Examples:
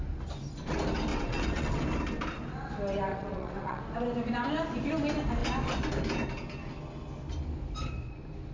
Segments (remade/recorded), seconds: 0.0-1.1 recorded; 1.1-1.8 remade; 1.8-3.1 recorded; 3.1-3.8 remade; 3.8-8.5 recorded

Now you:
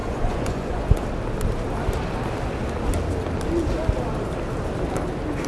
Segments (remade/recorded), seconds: 0.0-1.0 remade; 1.0-5.5 recorded

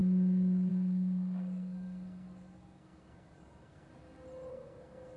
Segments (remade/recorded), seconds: 0.0-3.9 remade; 3.9-4.5 recorded; 4.5-5.2 remade

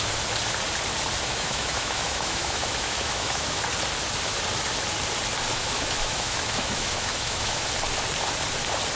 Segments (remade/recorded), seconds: 0.0-1.3 recorded; 1.3-3.6 remade; 3.6-5.5 recorded; 5.5-7.7 remade; 7.7-9.0 recorded

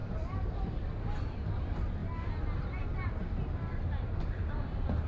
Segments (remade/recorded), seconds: 0.0-5.1 recorded

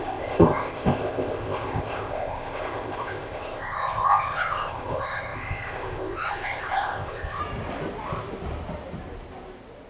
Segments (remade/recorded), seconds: 0.0-7.4 remade; 7.4-9.9 recorded